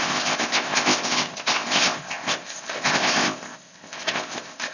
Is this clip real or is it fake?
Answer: fake